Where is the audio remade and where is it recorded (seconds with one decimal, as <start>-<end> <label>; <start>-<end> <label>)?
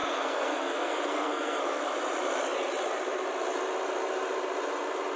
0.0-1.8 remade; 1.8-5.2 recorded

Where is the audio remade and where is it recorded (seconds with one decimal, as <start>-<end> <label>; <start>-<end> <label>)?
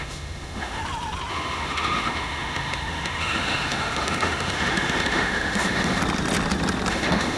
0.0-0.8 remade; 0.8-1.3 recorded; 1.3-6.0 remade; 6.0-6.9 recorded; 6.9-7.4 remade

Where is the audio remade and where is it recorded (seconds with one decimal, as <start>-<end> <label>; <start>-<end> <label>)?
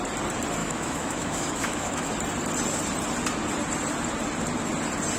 0.0-0.6 recorded; 0.6-2.1 remade; 2.1-5.2 recorded